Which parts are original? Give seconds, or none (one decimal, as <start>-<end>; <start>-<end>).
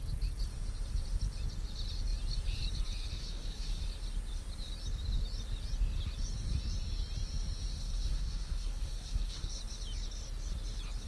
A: 0.0-3.2; 3.8-7.7; 9.5-11.1